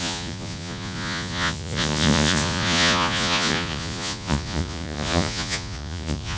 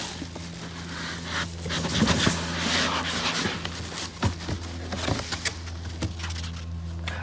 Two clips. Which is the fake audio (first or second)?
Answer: first